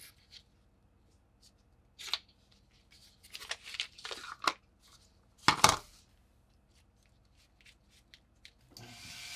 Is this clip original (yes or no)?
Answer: yes